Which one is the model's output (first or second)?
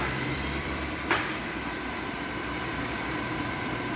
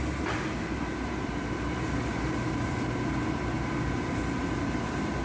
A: first